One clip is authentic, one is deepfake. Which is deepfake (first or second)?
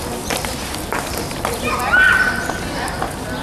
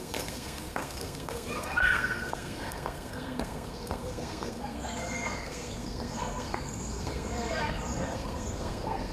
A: second